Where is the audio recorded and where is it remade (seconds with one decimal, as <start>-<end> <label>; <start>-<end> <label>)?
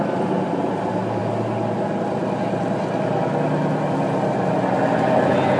0.0-5.6 recorded